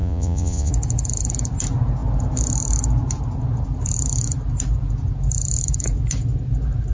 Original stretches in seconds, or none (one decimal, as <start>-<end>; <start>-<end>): 0.7-6.9